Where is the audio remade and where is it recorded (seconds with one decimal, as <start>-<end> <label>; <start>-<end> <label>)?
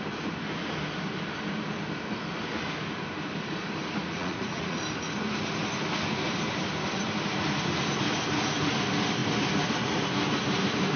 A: 0.0-4.1 recorded; 4.1-4.8 remade; 4.8-11.0 recorded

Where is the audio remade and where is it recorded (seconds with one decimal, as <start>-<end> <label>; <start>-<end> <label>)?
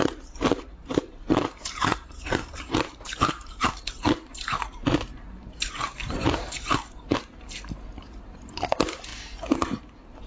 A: 0.0-9.1 remade; 9.1-9.8 recorded; 9.8-10.3 remade